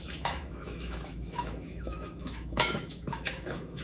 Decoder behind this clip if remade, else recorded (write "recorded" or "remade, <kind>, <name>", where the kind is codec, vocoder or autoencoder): remade, autoencoder, DAC-VAE